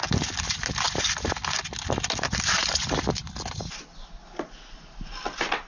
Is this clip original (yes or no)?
yes